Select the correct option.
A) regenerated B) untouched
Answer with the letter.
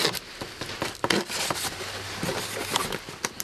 B